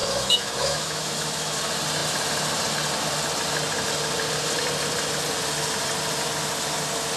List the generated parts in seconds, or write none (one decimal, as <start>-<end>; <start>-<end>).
0.0-1.6